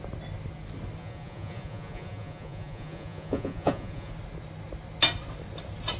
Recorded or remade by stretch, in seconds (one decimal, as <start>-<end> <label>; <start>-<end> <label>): 0.0-1.0 recorded; 1.0-4.1 remade; 4.1-6.0 recorded